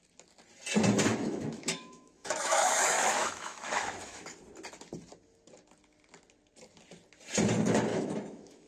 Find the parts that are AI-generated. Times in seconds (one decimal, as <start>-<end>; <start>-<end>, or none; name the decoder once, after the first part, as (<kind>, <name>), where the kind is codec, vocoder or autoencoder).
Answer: 1.1-4.3 (autoencoder, DAC-VAE); 7.9-8.7